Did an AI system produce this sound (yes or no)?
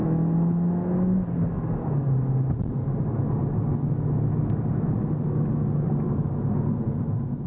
no